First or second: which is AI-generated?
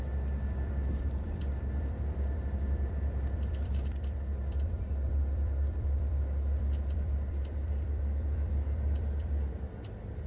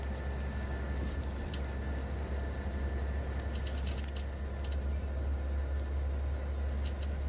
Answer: first